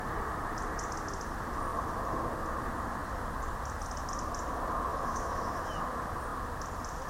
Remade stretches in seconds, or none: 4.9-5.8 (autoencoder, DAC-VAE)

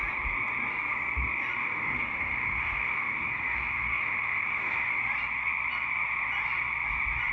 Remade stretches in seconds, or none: 1.6-5.0 (autoencoder, DAC-VAE)